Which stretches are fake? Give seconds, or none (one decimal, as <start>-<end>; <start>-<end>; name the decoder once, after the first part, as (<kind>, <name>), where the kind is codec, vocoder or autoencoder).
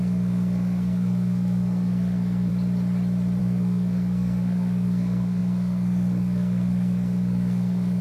0.0-2.5 (codec, SNAC); 3.4-8.0